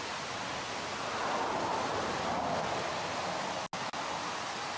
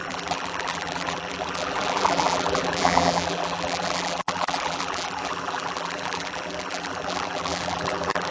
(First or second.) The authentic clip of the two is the first